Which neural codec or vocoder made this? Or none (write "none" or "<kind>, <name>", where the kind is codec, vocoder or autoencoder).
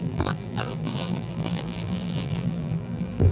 vocoder, BigVGAN v2